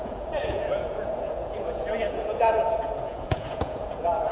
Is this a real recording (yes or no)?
no